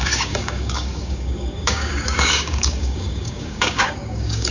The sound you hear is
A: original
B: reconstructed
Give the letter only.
B